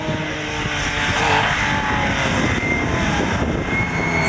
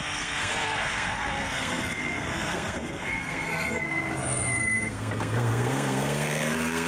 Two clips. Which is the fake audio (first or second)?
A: second